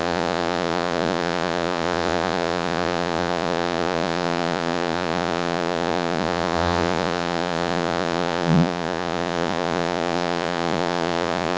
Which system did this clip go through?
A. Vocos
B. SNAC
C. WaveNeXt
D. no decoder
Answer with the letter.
A